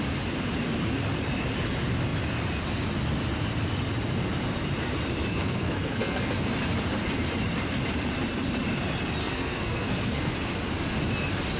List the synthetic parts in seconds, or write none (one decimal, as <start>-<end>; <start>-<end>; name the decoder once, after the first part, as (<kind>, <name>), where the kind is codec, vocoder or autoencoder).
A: 5.3-6.3 (codec, SNAC); 9.2-10.3